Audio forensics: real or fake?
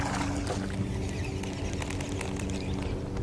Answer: real